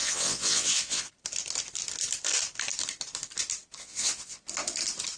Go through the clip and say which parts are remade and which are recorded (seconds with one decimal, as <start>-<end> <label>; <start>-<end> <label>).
0.0-1.1 remade; 1.1-3.8 recorded; 3.8-4.4 remade; 4.4-5.2 recorded